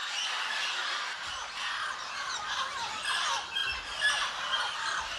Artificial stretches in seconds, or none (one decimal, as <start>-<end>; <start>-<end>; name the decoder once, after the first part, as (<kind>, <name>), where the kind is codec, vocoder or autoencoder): none